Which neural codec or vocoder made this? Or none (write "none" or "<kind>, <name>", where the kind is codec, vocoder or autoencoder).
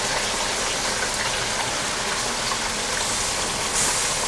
none